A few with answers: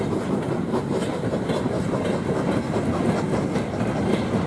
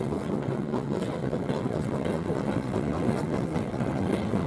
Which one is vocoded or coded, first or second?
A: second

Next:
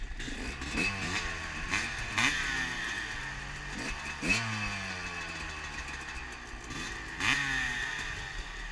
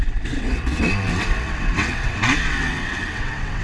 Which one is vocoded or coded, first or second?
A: second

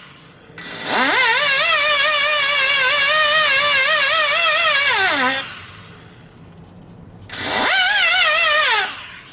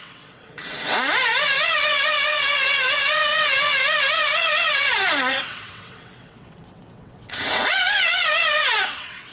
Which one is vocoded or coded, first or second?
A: second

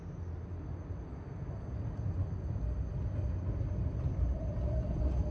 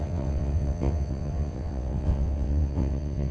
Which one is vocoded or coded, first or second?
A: second